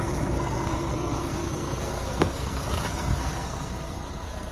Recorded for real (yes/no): no